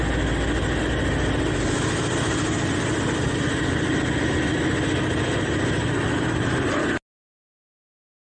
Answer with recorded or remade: recorded